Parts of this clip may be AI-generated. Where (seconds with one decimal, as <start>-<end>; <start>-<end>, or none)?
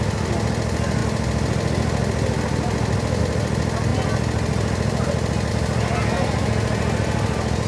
none